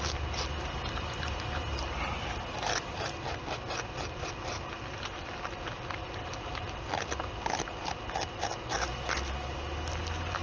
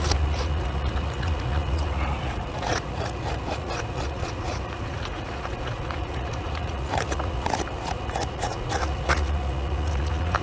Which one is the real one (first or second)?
first